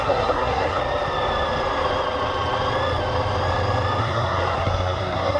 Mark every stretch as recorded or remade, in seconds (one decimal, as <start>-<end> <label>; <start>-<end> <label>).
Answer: 0.0-0.8 remade; 0.8-4.0 recorded; 4.0-5.4 remade